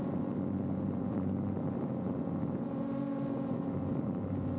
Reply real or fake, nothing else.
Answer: real